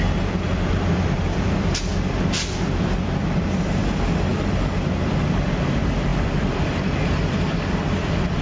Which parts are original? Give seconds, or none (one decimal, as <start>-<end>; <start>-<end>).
1.9-3.8